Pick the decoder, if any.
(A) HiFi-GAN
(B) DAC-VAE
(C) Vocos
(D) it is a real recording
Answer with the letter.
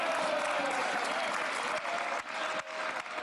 D